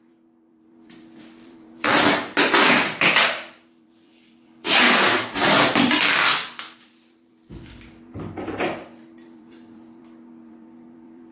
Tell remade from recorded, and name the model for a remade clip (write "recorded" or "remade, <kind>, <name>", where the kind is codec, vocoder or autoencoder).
remade, vocoder, BigVGAN v2